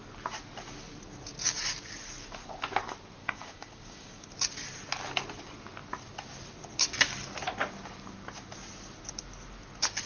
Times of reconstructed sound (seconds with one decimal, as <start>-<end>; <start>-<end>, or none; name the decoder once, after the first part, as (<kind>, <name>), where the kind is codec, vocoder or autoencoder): 3.2-4.3 (codec, DAC)